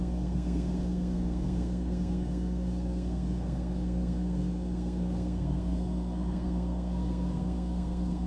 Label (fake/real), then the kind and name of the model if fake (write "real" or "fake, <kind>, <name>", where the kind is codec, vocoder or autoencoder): fake, codec, SNAC